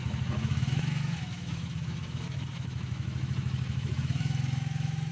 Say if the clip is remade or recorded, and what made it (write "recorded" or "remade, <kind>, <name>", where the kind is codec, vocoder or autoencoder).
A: remade, autoencoder, DAC-VAE